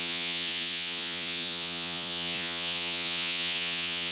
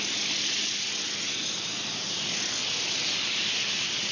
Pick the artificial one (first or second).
first